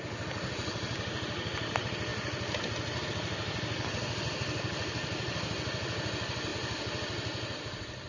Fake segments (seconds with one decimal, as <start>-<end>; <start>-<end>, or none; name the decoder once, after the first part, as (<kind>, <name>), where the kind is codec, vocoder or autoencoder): none